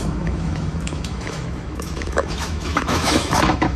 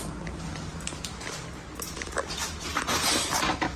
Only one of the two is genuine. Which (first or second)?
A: second